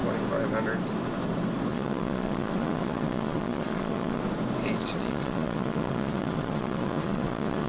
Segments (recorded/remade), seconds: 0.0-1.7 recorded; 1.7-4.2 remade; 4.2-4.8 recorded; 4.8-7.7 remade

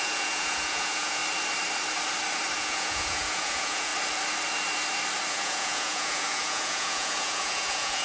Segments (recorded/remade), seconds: 0.0-1.2 remade; 1.2-2.6 recorded; 2.6-3.9 remade; 3.9-5.3 recorded; 5.3-8.0 remade

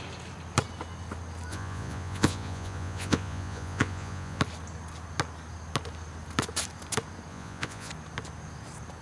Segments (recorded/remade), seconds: 0.0-1.5 recorded; 1.5-4.4 remade; 4.4-7.3 recorded; 7.3-7.9 remade; 7.9-9.0 recorded

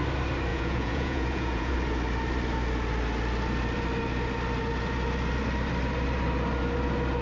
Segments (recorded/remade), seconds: 0.0-0.5 recorded; 0.5-1.7 remade; 1.7-7.2 recorded

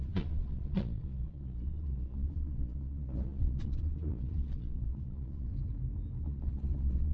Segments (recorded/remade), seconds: 0.0-5.5 remade; 5.5-6.2 recorded; 6.2-7.1 remade

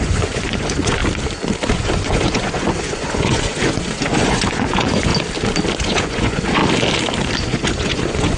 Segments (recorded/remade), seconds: 0.0-1.0 remade; 1.0-1.7 recorded; 1.7-5.1 remade; 5.1-5.8 recorded; 5.8-6.6 remade; 6.6-7.4 recorded; 7.4-8.4 remade

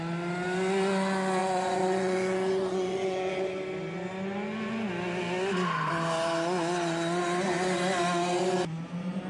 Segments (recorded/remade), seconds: 0.0-1.4 recorded; 1.4-3.3 remade; 3.3-9.3 recorded

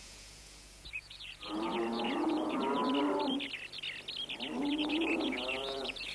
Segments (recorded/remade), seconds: 0.0-2.8 remade; 2.8-4.6 recorded; 4.6-6.1 remade